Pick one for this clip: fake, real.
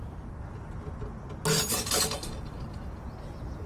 real